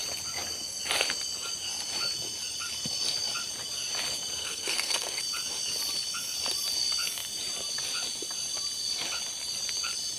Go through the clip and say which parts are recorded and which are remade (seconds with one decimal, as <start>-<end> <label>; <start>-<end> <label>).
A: 0.0-4.4 recorded; 4.4-5.2 remade; 5.2-10.2 recorded